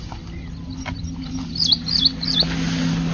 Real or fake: real